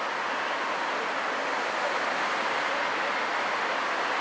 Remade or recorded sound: recorded